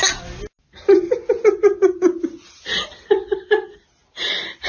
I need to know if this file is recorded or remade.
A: recorded